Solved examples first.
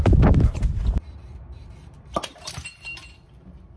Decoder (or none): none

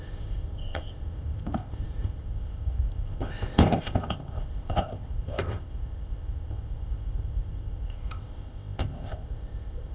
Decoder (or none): codec, ZipCodec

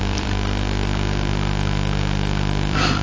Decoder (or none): vocoder, BigVGAN v2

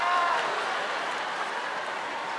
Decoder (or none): none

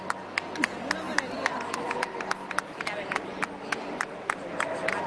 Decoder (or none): none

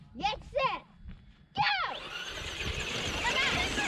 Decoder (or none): none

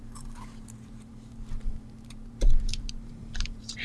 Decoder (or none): vocoder, BigVGAN v2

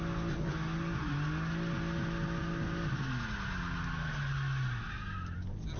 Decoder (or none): none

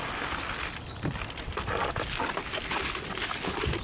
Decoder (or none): none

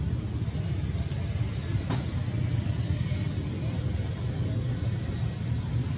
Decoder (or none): none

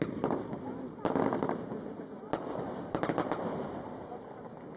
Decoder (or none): none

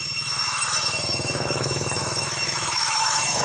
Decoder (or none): autoencoder, DAC-VAE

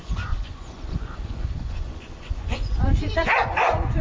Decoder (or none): vocoder, Vocos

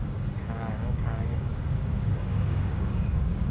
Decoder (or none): codec, DAC